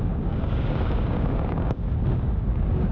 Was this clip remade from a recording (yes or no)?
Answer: yes